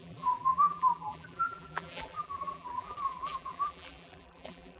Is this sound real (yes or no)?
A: no